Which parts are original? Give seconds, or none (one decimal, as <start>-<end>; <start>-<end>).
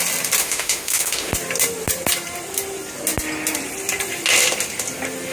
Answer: 0.0-0.4; 1.3-5.3